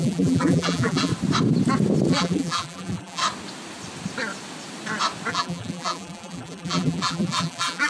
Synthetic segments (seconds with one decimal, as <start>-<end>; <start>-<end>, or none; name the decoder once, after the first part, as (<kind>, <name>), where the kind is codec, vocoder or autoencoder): 0.0-1.1 (vocoder, BigVGAN v2); 2.1-3.2; 5.3-7.9